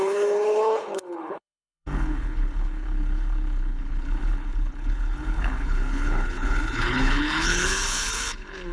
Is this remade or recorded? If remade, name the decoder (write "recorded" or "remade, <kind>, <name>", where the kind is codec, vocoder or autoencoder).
remade, codec, HILCodec